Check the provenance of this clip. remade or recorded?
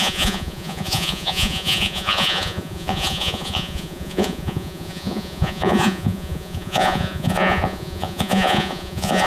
remade